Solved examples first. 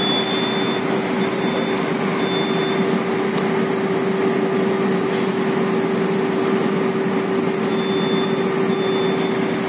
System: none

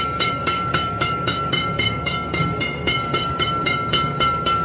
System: codec, DAC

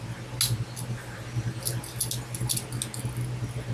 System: none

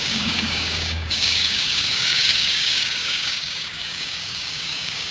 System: codec, DAC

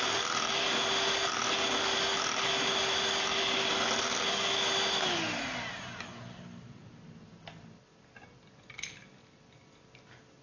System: none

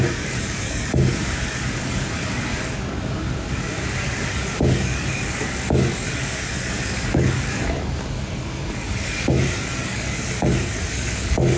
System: codec, DAC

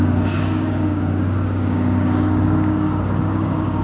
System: codec, DAC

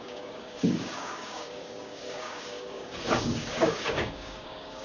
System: codec, DAC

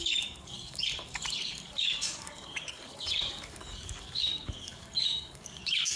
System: codec, DAC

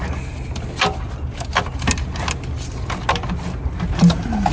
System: none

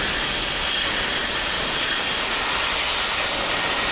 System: none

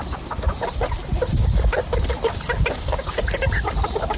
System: none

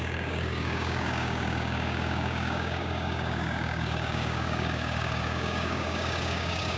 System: codec, DAC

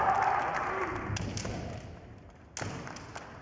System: none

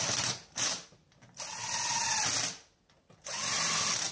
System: none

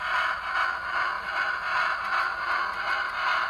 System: none